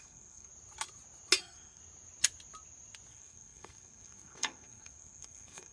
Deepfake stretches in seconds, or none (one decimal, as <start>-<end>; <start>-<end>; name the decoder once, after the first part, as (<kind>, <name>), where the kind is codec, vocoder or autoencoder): 0.0-0.5 (codec, SNAC); 1.4-1.8; 3.1-5.7